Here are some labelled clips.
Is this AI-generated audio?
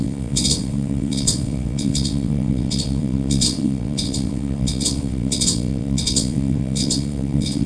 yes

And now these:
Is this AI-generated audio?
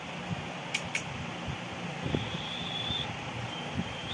no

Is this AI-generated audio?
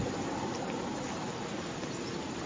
no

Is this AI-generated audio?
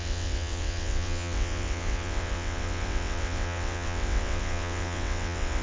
yes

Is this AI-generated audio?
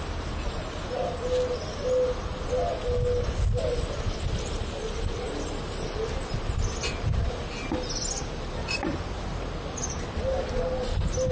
no